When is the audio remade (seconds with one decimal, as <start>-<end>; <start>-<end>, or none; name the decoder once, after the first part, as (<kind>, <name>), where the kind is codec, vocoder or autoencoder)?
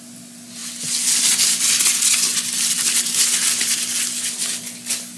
none